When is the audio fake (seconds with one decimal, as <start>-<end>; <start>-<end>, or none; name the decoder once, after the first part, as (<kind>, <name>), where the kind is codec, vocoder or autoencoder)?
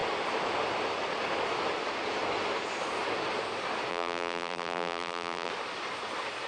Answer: 3.9-5.5 (vocoder, BigVGAN v2)